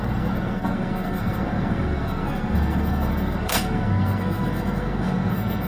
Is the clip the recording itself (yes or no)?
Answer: no